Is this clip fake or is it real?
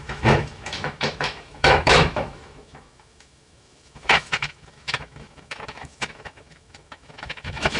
fake